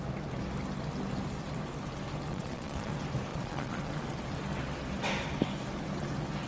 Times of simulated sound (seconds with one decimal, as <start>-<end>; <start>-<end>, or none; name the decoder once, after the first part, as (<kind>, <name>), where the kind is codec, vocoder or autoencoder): 2.3-2.9 (vocoder, Vocos); 3.3-3.9